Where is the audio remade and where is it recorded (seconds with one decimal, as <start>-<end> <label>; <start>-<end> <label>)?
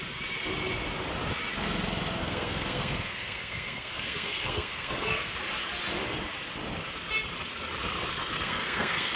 0.0-2.2 recorded; 2.2-5.3 remade; 5.3-8.2 recorded; 8.2-9.2 remade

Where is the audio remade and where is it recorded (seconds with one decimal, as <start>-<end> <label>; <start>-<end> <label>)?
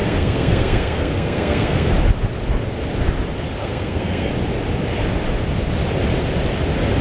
0.0-1.9 remade; 1.9-3.6 recorded; 3.6-4.3 remade; 4.3-7.0 recorded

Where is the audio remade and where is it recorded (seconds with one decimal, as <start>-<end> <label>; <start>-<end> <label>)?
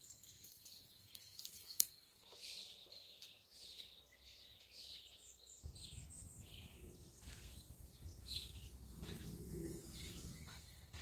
0.0-11.0 remade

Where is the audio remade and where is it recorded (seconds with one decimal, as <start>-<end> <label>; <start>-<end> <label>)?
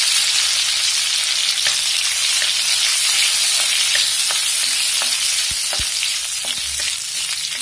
0.0-7.6 recorded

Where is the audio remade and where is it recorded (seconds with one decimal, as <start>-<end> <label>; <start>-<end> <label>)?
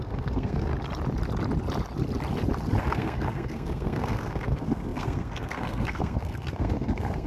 0.0-0.7 remade; 0.7-2.8 recorded; 2.8-7.3 remade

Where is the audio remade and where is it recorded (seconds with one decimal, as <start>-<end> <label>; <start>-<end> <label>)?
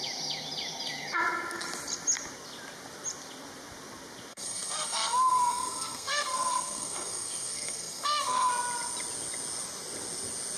0.0-4.3 recorded; 4.3-8.5 remade; 8.5-10.6 recorded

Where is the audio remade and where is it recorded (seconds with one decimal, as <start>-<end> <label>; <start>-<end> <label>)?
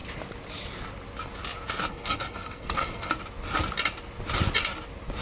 0.0-1.9 recorded; 1.9-3.1 remade; 3.1-5.2 recorded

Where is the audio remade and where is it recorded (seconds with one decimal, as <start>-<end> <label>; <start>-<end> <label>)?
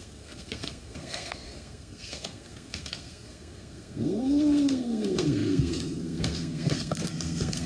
0.0-7.7 remade